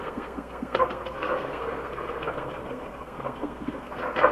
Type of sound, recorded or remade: remade